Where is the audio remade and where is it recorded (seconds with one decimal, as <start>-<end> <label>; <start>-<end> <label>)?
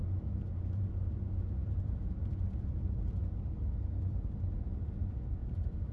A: 0.0-0.9 remade; 0.9-1.6 recorded; 1.6-2.2 remade; 2.2-5.4 recorded; 5.4-5.9 remade